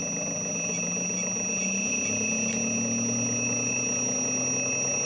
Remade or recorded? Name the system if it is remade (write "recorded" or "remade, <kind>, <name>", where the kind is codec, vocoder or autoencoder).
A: recorded